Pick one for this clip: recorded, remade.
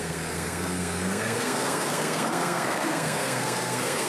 remade